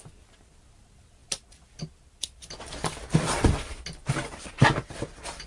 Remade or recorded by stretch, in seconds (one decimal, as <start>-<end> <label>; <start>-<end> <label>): 0.0-5.5 recorded